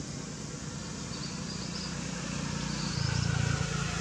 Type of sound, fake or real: real